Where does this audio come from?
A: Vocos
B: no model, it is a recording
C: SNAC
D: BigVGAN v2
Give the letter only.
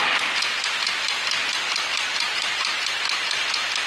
B